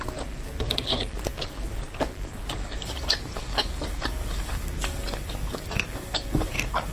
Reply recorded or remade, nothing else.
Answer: remade